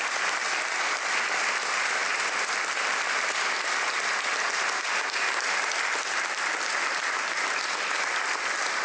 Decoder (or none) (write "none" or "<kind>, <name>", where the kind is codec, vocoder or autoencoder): none